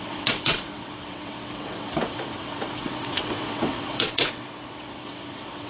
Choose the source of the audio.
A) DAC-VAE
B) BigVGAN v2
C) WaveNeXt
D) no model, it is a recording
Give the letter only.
C